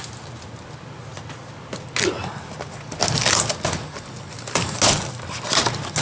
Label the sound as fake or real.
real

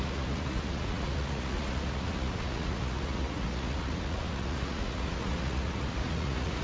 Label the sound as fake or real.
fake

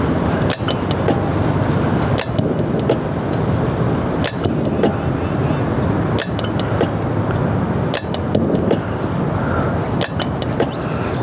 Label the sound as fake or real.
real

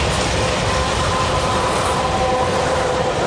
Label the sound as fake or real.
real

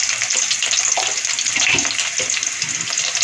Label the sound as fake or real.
real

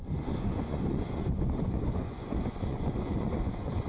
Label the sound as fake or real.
fake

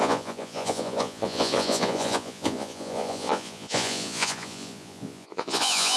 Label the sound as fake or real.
fake